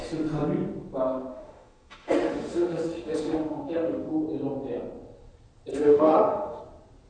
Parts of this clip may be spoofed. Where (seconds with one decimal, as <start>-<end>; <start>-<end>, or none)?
1.3-4.1; 5.7-6.6